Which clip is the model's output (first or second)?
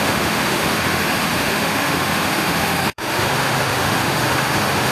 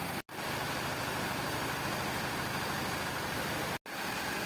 first